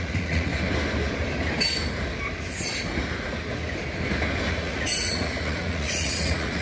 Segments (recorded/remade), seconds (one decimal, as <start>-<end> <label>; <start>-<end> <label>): 0.0-0.5 remade; 0.5-4.5 recorded; 4.5-6.6 remade